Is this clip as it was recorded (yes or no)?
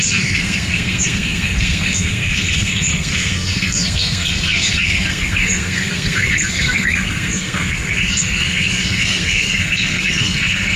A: no